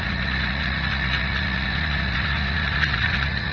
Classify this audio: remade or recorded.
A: remade